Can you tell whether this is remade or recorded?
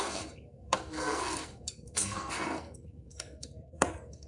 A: remade